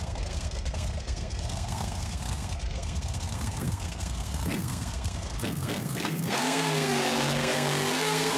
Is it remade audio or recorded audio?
remade